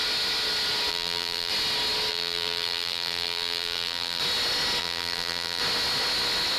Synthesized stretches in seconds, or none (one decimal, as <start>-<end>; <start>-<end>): 0.9-1.5; 2.1-4.2; 4.8-5.6